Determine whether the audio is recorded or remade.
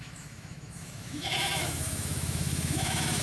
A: remade